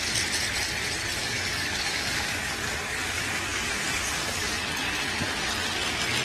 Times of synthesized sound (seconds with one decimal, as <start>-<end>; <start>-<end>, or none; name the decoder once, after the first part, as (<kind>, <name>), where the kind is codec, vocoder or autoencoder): 1.2-4.6 (codec, DAC)